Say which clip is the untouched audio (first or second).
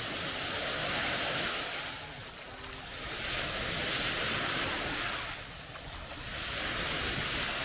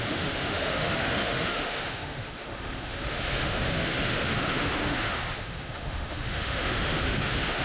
first